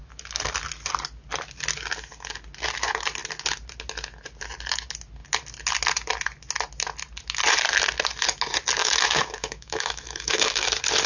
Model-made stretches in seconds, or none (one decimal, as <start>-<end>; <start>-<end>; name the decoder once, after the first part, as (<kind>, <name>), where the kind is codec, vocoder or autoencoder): 8.8-10.7 (autoencoder, DAC-VAE)